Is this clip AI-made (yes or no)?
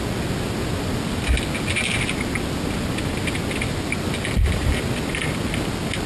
no